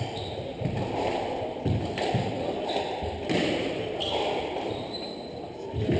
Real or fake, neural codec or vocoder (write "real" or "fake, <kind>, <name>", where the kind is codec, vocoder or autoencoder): real